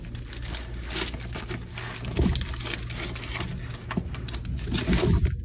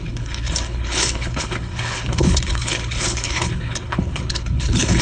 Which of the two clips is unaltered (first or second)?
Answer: first